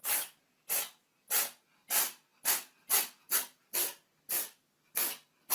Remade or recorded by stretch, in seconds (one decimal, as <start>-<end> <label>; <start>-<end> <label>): 0.0-5.5 recorded